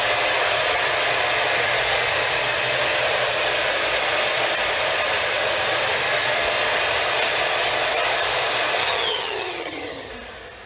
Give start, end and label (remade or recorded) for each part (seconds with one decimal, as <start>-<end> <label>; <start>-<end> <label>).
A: 0.0-8.8 recorded; 8.8-10.1 remade; 10.1-10.7 recorded